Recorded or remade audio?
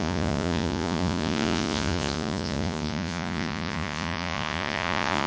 remade